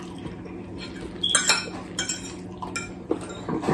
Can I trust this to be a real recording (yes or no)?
yes